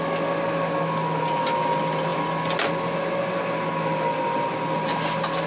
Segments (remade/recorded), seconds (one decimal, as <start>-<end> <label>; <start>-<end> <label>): 0.0-5.5 recorded